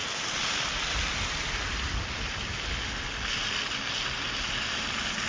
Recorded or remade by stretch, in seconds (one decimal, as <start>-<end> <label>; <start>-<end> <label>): 0.0-5.3 recorded